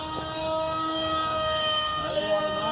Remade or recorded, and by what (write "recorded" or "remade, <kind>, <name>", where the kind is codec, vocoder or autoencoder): remade, codec, DAC